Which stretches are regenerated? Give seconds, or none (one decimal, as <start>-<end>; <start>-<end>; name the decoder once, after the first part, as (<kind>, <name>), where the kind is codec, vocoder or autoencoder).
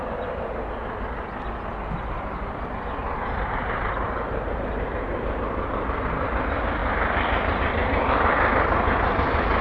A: 3.0-6.3 (vocoder, BigVGAN v2)